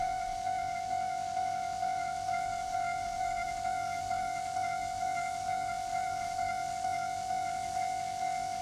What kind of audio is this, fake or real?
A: fake